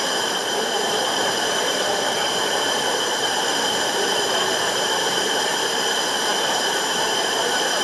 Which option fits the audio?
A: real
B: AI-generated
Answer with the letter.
B